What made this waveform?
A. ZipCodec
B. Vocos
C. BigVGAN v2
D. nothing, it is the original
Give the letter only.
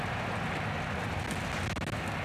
D